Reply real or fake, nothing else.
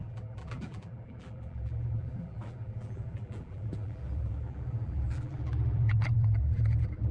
fake